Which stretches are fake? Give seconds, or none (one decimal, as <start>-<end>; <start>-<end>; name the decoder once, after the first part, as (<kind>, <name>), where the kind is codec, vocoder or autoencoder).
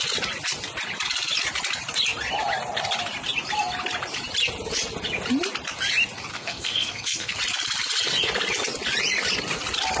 6.3-7.4 (codec, SNAC)